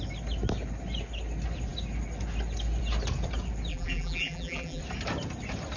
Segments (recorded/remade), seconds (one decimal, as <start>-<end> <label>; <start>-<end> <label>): 0.0-3.7 recorded; 3.7-4.8 remade; 4.8-5.8 recorded